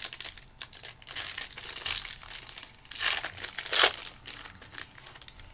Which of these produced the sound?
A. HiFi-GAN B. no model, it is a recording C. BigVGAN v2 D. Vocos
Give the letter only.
B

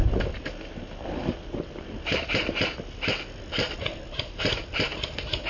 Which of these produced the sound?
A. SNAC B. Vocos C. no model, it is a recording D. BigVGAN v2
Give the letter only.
C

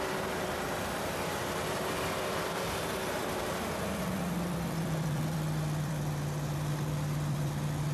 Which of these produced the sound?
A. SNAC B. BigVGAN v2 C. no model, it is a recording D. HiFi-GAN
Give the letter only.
B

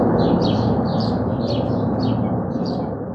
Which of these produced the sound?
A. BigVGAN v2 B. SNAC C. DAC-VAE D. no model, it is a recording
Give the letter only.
A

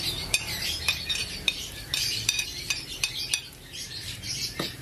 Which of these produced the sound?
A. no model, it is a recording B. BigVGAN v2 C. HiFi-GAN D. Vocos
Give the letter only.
B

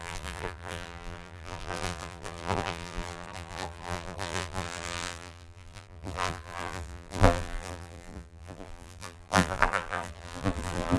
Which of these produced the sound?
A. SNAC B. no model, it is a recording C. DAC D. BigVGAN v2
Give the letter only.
D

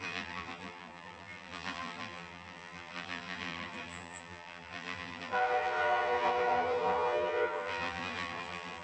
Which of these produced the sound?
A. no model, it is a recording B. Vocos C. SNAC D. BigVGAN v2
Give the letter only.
D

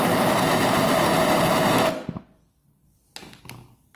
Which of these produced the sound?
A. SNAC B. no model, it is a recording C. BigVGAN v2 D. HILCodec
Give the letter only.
B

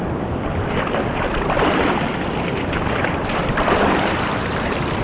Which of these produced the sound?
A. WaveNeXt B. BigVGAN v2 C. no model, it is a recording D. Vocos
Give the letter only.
B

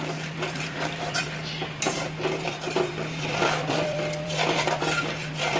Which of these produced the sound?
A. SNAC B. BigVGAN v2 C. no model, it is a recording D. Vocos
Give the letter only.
B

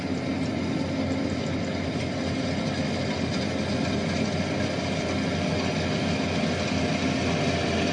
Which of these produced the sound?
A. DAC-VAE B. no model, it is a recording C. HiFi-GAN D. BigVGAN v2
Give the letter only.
B